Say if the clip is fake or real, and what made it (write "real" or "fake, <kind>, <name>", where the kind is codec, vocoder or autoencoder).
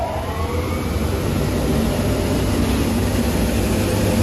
real